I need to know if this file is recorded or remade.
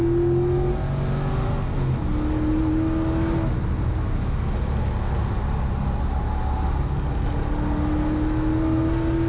recorded